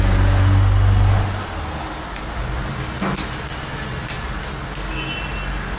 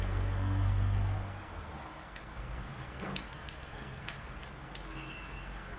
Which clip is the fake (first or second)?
second